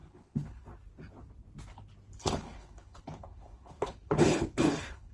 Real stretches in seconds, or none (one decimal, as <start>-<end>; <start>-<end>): 0.6-2.2